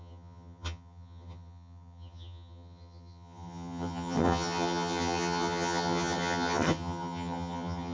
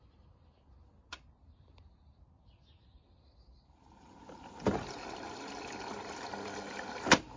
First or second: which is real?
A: second